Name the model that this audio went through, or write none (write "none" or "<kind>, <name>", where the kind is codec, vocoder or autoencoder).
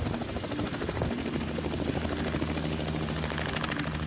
none